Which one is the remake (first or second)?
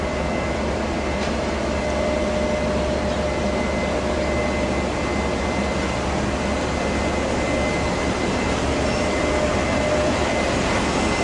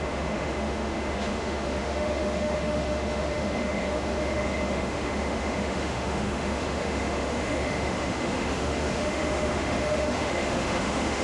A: second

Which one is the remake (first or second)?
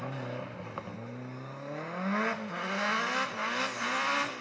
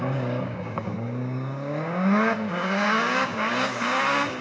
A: second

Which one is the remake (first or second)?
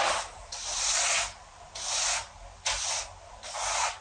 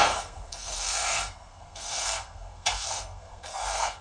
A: second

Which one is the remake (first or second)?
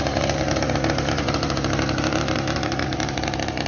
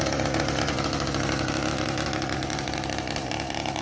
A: first